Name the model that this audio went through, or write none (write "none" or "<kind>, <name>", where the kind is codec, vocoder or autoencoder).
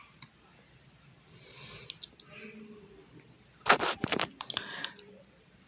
none